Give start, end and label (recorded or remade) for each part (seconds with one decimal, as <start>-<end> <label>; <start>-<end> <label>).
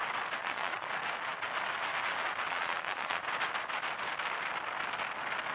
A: 0.0-0.4 recorded; 0.4-0.9 remade; 0.9-2.5 recorded; 2.5-3.2 remade; 3.2-5.5 recorded